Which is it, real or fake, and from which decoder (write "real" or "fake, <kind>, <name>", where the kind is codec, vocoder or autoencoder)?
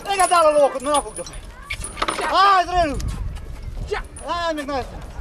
real